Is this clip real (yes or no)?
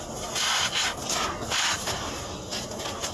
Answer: yes